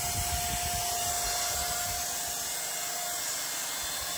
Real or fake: real